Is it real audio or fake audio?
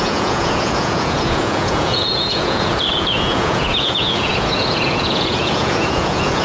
fake